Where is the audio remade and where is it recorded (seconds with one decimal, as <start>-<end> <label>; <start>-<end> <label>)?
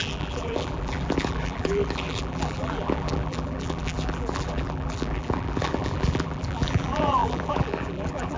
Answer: 0.0-8.4 remade